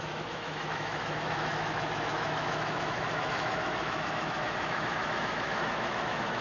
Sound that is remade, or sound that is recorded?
remade